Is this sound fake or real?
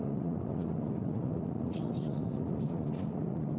fake